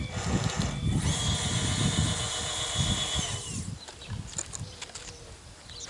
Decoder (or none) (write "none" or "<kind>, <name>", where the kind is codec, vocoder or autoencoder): none